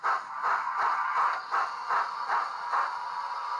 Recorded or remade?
recorded